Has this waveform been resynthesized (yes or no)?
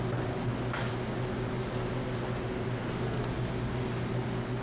no